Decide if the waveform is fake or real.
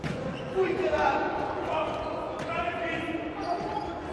fake